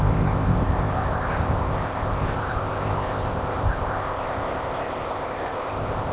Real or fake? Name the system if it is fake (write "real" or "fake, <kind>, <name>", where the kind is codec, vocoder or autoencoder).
fake, codec, ZipCodec